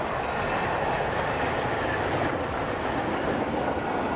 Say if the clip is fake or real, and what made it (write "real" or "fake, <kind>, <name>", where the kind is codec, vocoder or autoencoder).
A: real